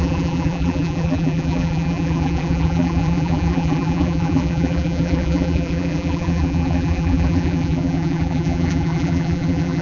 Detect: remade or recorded remade